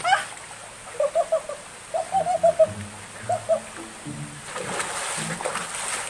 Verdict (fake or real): real